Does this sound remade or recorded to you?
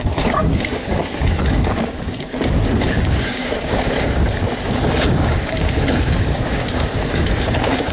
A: remade